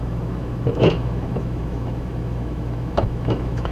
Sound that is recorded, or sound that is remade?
remade